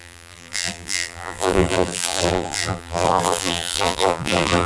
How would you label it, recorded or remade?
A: remade